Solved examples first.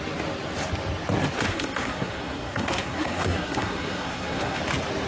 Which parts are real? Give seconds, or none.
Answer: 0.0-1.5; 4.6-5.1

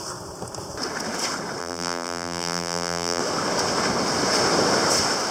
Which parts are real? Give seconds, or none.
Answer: 0.0-1.6; 3.2-5.3

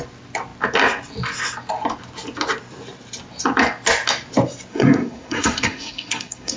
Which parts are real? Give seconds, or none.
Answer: 0.0-4.7

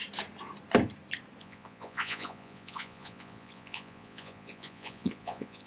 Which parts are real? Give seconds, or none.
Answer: 0.0-1.4

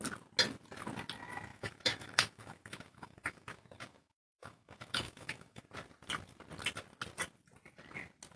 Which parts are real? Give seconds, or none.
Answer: 0.0-1.5; 5.6-8.4

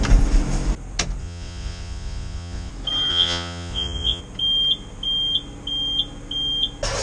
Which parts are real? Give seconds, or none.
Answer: 0.0-1.2; 2.7-3.1; 4.2-7.0

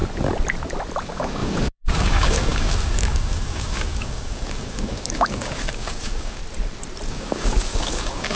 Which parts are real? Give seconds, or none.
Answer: 0.0-1.0; 6.4-7.1

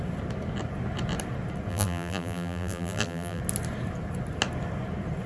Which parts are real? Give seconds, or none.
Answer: 0.0-1.7; 3.4-5.3